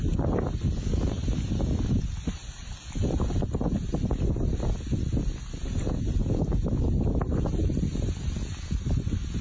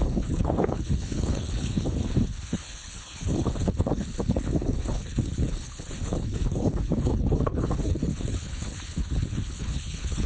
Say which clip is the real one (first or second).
first